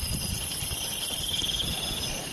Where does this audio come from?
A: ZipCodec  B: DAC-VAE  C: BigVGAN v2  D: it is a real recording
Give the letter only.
C